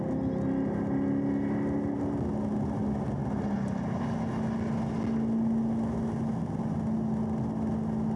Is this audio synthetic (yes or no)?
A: no